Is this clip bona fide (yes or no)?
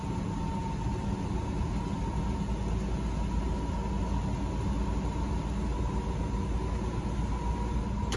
yes